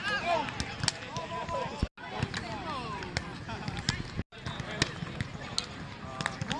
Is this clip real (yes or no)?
yes